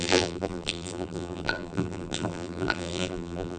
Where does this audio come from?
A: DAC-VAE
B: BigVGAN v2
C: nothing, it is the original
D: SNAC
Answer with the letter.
B